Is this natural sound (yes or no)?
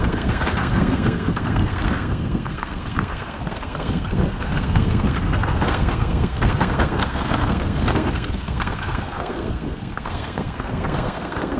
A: no